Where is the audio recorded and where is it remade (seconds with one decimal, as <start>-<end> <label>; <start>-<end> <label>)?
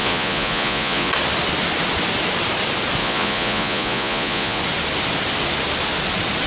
0.0-1.1 remade; 1.1-3.0 recorded; 3.0-4.6 remade; 4.6-6.5 recorded